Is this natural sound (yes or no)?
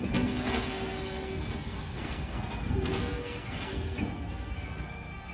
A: no